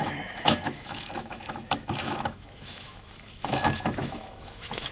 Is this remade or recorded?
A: remade